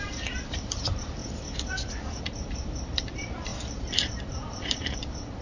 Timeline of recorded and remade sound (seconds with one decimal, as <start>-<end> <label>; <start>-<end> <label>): 0.0-1.2 remade; 1.2-2.2 recorded; 2.2-5.4 remade